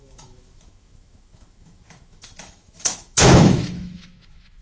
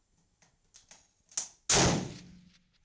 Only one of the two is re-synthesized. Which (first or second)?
first